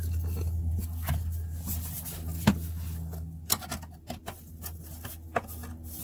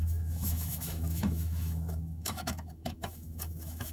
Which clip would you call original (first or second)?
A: first